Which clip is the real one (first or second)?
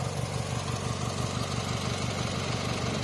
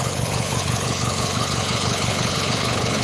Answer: first